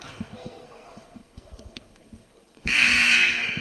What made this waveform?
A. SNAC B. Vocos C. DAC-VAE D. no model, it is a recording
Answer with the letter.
A